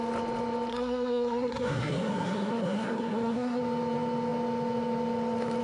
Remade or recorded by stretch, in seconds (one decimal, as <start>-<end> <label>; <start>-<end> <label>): 0.0-0.7 recorded; 0.7-3.6 remade; 3.6-5.6 recorded